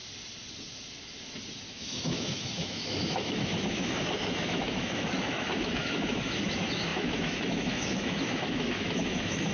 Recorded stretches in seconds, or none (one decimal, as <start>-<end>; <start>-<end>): 0.0-1.7